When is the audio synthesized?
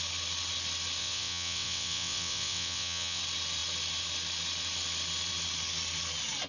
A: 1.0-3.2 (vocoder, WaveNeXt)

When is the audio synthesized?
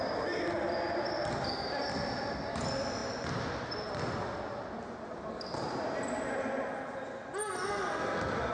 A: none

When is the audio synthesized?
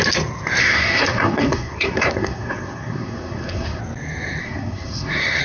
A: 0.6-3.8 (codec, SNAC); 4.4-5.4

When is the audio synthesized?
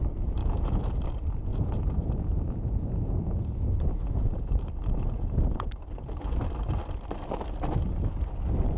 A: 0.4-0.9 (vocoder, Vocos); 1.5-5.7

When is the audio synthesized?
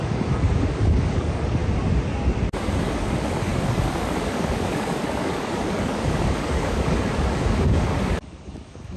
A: 0.0-1.6 (codec, DAC); 2.8-9.0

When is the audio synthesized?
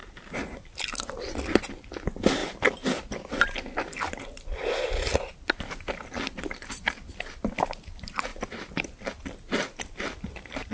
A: none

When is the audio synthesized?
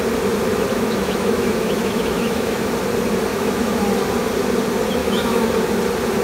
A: 0.7-2.7 (autoencoder, DAC-VAE); 3.3-3.8; 5.0-5.5